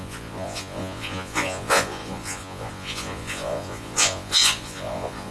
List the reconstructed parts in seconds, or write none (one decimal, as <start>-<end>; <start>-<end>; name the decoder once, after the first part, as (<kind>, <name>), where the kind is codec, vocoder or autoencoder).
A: 0.0-5.3 (vocoder, Vocos)